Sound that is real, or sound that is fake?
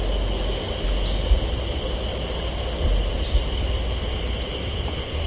real